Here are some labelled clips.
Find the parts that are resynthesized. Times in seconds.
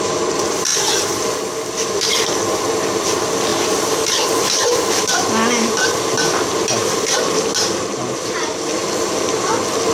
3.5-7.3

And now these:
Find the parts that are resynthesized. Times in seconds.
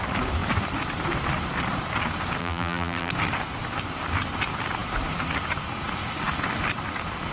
2.4-3.1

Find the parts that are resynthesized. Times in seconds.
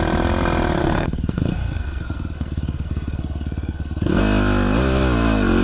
0.8-4.2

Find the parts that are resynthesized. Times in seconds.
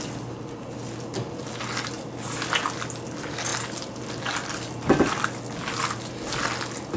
none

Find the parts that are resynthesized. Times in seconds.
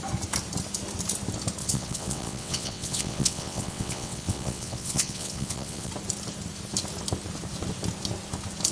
1.6-5.9